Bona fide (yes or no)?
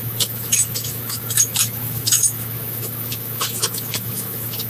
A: no